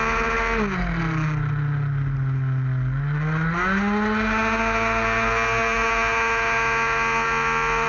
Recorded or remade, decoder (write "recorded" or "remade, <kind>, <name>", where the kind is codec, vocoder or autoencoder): recorded